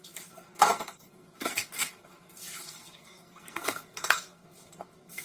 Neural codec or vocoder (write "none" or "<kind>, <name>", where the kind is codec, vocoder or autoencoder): codec, SNAC